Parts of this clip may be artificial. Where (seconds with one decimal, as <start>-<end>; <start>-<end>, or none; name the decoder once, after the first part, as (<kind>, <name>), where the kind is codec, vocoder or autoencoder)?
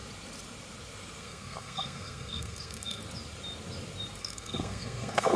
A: 1.2-3.0 (codec, SNAC); 4.2-5.4